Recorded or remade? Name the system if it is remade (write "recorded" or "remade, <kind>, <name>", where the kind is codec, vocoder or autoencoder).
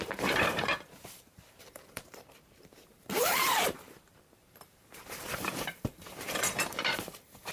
remade, vocoder, BigVGAN v2